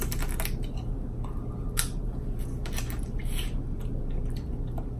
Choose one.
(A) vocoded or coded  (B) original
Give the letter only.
B